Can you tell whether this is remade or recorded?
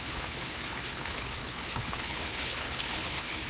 remade